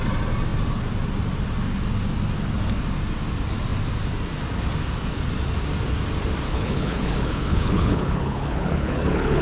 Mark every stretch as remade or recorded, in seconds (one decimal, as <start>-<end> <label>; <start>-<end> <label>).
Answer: 0.0-6.5 recorded; 6.5-9.4 remade